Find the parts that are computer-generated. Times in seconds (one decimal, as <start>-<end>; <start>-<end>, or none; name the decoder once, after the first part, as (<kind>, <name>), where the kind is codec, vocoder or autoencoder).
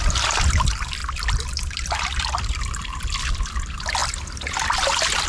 none